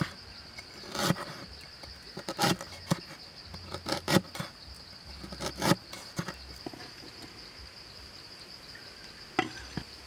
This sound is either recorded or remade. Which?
recorded